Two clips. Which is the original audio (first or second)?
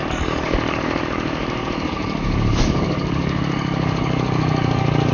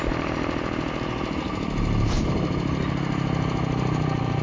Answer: second